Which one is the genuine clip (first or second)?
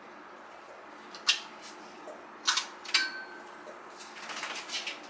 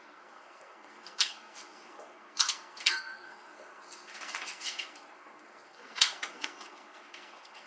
first